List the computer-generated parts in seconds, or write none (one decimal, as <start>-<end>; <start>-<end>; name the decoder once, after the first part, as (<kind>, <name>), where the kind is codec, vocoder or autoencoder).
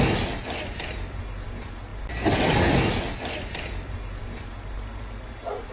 none